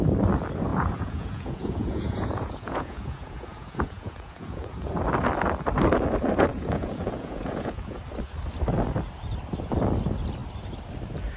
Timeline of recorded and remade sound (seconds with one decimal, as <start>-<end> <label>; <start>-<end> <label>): 0.0-0.7 recorded; 0.7-5.0 remade; 5.0-6.5 recorded; 6.5-8.0 remade; 8.0-11.4 recorded